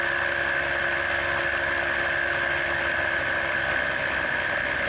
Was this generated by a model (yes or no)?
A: no